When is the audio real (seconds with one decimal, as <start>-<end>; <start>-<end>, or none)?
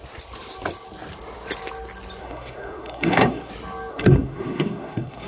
0.0-2.2; 3.5-3.9